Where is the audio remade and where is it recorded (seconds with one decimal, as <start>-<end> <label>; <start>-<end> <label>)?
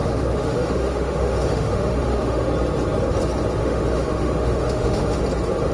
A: 0.0-2.5 remade; 2.5-3.6 recorded; 3.6-5.2 remade; 5.2-5.7 recorded